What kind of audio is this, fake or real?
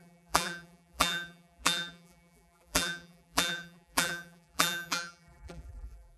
fake